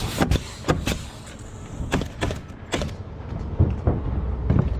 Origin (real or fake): real